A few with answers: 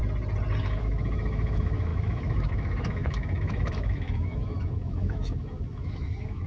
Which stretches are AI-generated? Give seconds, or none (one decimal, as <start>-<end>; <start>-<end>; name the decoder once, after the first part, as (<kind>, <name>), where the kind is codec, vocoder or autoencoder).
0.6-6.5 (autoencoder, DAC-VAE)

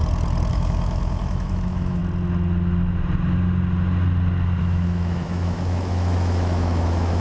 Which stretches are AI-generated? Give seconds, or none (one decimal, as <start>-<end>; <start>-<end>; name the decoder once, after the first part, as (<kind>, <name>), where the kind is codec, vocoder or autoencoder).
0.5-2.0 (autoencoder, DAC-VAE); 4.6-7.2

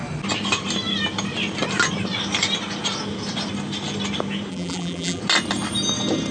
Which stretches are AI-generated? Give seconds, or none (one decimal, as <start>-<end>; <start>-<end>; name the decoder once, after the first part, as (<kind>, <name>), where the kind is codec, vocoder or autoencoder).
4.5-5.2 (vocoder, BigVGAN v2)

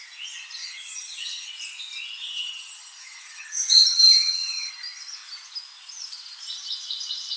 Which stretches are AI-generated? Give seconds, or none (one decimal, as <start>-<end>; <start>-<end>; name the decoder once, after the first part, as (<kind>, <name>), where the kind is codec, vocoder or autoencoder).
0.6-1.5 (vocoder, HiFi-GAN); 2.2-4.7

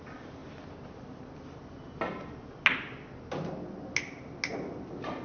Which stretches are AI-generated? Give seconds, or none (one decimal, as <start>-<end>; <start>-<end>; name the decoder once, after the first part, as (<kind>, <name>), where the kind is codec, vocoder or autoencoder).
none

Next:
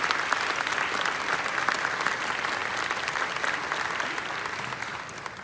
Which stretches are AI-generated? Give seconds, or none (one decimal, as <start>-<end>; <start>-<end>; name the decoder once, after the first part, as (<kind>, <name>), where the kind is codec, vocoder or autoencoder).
none

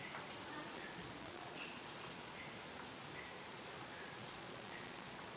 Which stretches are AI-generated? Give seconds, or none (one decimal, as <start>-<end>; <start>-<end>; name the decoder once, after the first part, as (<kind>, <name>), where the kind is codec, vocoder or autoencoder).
0.6-2.4 (vocoder, Vocos); 3.5-5.4